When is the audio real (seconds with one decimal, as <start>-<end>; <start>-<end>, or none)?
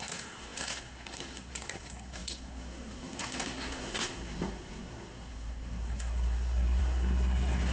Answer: none